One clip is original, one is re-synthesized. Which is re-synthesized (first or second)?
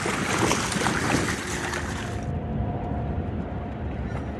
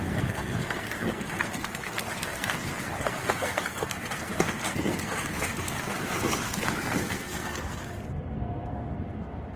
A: second